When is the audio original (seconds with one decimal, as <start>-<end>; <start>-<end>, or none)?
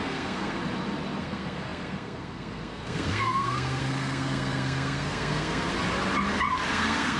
0.6-1.2; 5.7-6.7